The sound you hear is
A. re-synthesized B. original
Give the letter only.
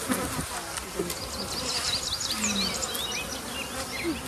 B